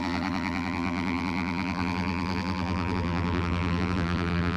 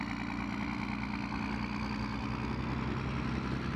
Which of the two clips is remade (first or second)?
first